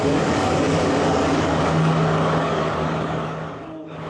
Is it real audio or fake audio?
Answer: fake